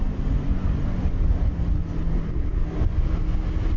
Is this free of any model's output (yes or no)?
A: yes